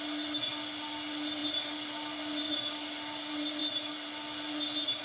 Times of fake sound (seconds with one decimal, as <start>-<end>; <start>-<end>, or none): none